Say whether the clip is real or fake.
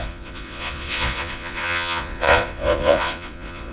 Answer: fake